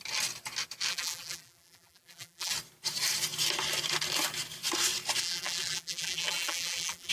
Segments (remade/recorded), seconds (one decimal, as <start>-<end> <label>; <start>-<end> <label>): 0.0-0.9 recorded; 0.9-2.5 remade; 2.5-5.2 recorded; 5.2-7.1 remade